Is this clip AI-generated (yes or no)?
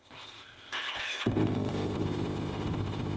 yes